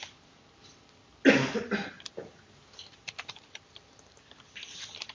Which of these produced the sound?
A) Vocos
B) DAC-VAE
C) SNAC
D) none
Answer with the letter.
D